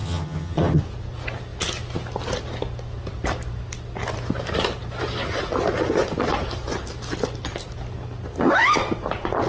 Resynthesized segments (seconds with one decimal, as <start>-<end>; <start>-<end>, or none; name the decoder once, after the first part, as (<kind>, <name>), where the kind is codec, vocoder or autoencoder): 0.0-0.8 (vocoder, HiFi-GAN)

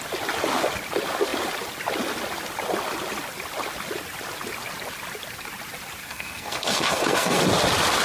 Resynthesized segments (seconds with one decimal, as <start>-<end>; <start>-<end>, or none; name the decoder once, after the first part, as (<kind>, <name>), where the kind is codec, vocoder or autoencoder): 6.0-7.4 (codec, SNAC)

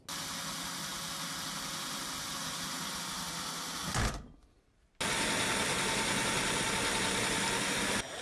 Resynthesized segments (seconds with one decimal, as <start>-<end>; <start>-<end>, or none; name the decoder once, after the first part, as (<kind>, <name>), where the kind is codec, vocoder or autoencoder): none